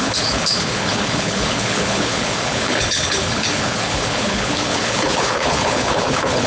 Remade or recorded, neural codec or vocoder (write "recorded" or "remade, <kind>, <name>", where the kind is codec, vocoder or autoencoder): remade, codec, HILCodec